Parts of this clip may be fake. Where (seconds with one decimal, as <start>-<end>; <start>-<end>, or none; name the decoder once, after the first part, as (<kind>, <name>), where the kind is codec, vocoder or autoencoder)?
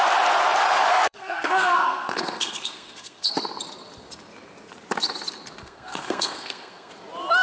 0.9-3.3 (codec, SNAC); 5.6-6.9